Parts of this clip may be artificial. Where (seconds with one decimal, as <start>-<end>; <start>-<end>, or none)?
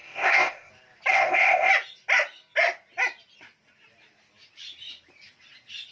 0.0-0.7; 1.1-1.7